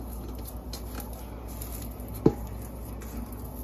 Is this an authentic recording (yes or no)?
yes